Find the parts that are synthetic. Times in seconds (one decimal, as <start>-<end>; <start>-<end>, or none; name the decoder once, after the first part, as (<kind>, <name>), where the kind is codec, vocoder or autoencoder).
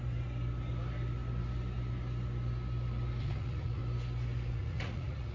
3.2-3.8 (vocoder, Vocos); 4.5-5.3